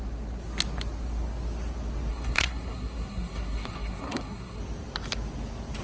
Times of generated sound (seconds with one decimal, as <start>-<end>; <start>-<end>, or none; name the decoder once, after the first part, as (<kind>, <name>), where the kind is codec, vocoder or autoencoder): 2.1-4.6 (codec, SNAC)